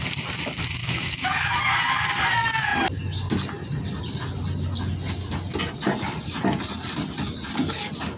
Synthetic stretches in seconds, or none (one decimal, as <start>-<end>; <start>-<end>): 0.8-1.6